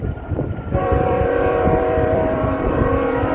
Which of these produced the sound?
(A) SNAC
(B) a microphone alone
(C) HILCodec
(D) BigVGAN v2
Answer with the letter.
D